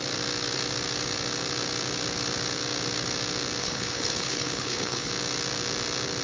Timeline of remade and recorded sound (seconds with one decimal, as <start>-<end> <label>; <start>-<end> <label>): 0.0-3.6 recorded; 3.6-5.1 remade; 5.1-6.2 recorded